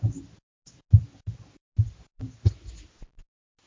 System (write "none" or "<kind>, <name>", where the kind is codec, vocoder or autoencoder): none